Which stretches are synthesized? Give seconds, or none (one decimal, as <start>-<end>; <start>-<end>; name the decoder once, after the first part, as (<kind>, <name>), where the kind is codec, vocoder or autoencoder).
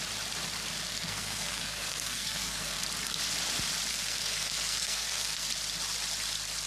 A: 0.9-2.8 (codec, SNAC); 3.9-5.5